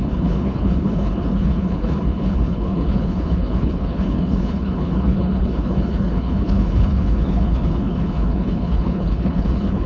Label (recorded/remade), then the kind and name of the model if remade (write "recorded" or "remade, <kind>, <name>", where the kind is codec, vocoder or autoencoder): remade, codec, HILCodec